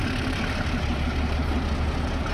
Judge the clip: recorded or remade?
recorded